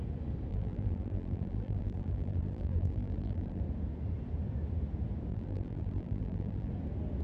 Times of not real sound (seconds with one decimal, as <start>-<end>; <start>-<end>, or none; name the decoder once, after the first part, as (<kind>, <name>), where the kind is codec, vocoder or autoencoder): 0.5-3.6 (vocoder, BigVGAN v2); 5.3-6.7